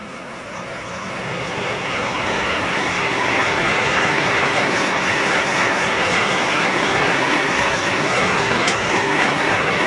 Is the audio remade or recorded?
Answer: remade